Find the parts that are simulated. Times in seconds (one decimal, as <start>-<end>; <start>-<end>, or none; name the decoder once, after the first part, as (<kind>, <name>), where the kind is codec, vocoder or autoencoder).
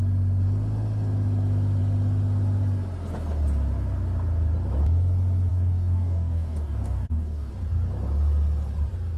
5.5-7.5 (codec, DAC)